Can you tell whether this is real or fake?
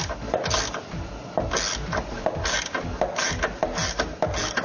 real